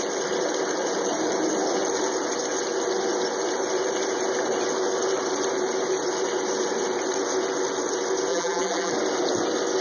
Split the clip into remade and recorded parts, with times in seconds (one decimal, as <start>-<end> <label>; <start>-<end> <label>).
0.0-8.3 recorded; 8.3-8.9 remade; 8.9-9.8 recorded